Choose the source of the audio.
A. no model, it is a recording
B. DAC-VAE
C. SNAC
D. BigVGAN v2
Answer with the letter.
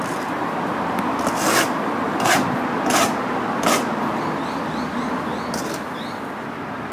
A